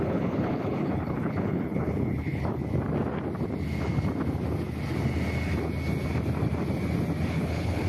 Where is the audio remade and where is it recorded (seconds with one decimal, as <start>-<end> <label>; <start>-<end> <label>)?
0.0-2.6 remade; 2.6-7.3 recorded; 7.3-7.9 remade